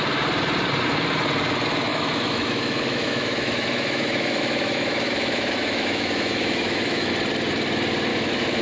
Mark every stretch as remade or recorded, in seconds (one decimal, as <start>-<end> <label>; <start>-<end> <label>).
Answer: 0.0-1.9 recorded; 1.9-7.1 remade; 7.1-8.1 recorded; 8.1-8.6 remade